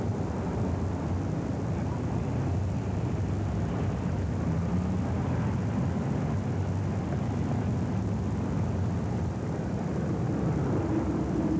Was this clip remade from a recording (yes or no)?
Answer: no